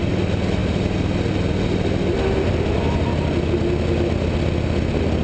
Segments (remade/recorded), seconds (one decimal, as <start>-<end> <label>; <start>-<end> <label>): 0.0-5.2 recorded